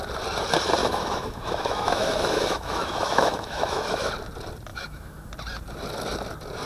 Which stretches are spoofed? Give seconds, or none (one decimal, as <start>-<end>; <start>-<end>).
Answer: 0.8-4.1; 4.7-5.3